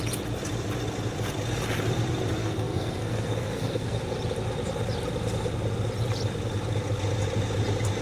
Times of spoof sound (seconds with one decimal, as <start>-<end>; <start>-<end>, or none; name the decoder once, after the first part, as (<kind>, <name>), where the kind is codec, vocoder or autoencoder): 2.4-4.0 (codec, SNAC)

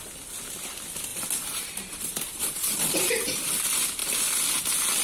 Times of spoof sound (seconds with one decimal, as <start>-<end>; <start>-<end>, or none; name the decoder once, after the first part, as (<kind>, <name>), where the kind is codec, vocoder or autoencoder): 1.1-3.6 (vocoder, BigVGAN v2)

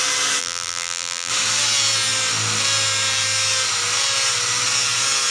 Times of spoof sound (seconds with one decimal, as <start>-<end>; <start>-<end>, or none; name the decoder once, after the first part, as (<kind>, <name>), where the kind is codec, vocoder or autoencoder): 0.4-1.3 (vocoder, BigVGAN v2)